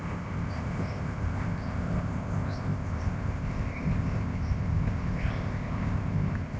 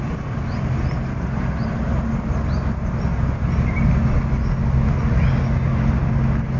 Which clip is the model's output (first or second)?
first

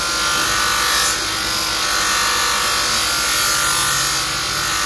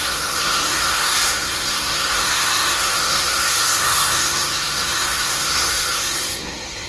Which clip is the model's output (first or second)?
second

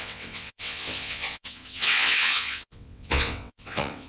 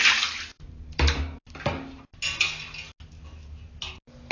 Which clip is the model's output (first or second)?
first